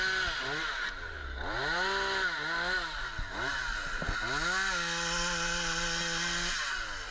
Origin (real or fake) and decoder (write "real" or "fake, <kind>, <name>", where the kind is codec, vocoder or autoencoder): real